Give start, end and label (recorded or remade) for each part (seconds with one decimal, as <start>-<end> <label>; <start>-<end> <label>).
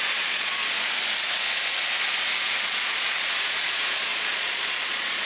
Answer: 0.0-0.6 remade; 0.6-2.6 recorded; 2.6-5.2 remade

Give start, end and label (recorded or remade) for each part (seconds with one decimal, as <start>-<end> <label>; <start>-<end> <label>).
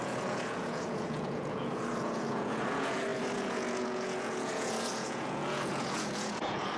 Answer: 0.0-6.8 remade